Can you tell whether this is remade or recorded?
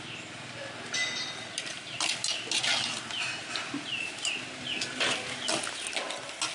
recorded